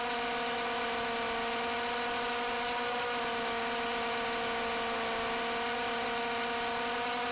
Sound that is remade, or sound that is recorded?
recorded